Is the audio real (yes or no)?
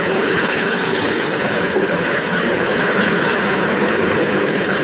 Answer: no